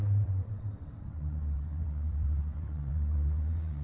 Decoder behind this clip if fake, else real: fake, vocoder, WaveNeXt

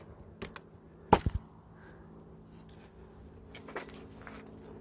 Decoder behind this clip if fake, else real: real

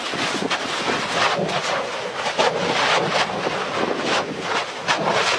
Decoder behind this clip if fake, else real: real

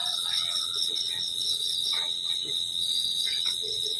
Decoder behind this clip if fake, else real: fake, vocoder, WaveNeXt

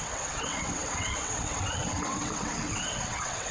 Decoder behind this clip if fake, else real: fake, vocoder, WaveNeXt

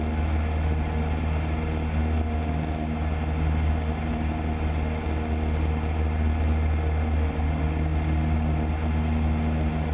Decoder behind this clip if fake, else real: real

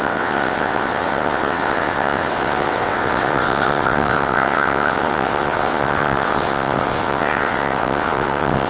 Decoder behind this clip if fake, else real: fake, vocoder, WaveNeXt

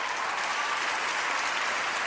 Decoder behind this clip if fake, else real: real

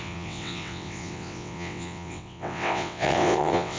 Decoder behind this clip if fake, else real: fake, vocoder, WaveNeXt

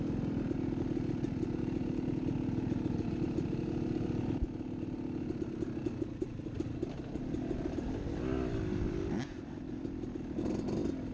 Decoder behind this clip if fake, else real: real